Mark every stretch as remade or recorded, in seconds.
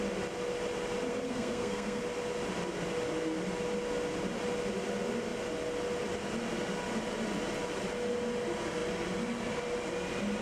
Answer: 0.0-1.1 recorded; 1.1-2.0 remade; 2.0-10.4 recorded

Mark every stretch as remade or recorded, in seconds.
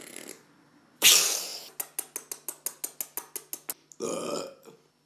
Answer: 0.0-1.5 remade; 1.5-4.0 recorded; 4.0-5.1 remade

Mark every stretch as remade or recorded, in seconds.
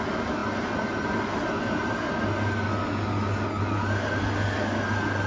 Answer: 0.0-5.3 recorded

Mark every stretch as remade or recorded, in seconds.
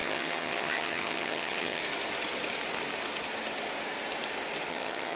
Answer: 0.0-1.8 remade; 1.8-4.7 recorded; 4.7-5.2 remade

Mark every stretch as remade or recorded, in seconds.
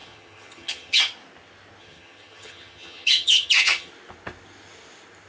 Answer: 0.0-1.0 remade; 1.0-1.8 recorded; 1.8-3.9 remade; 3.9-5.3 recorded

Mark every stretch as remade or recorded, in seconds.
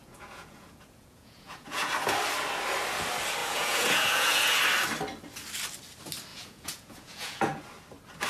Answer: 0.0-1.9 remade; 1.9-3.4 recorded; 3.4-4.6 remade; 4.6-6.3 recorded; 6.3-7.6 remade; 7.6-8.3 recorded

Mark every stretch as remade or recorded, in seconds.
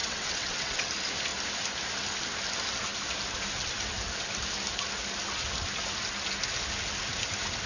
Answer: 0.0-0.9 remade; 0.9-7.7 recorded